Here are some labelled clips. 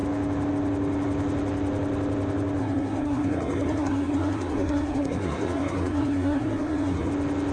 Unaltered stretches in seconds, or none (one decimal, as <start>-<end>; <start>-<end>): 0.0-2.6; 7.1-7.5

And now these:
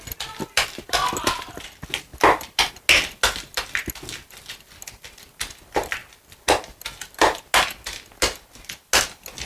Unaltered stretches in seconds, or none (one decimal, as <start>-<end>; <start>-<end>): 0.0-9.5

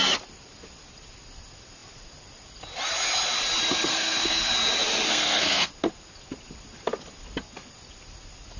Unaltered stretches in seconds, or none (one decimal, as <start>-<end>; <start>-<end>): 0.0-3.9; 4.5-5.1; 5.7-8.6

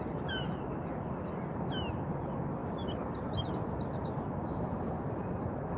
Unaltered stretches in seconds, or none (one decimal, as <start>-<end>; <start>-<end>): 0.0-5.8

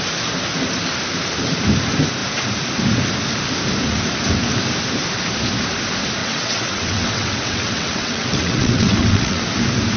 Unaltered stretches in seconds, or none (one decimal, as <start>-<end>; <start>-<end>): 0.0-6.2; 9.4-10.0

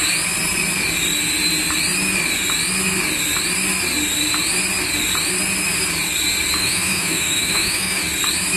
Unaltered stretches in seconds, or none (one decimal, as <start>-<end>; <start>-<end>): 0.0-6.6; 8.0-8.6